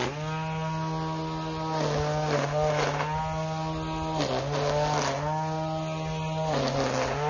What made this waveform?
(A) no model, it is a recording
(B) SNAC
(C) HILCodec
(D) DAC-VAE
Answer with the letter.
A